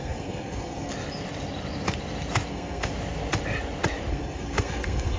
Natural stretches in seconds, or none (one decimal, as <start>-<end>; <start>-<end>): 0.9-2.5; 2.9-4.1